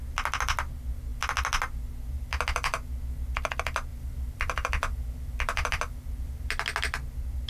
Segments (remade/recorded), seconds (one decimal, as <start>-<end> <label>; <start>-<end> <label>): 0.0-3.9 recorded; 3.9-6.5 remade; 6.5-7.5 recorded